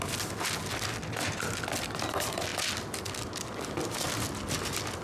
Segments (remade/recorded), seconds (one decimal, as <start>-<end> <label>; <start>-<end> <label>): 0.0-5.0 recorded